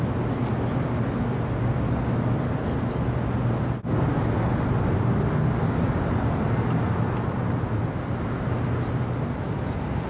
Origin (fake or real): real